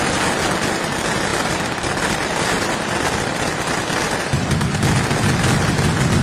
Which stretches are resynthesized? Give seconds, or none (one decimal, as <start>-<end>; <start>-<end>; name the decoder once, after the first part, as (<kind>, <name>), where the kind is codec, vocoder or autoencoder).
1.3-5.0 (vocoder, BigVGAN v2)